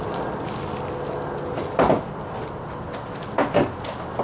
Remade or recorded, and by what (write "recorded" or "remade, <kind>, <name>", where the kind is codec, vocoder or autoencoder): recorded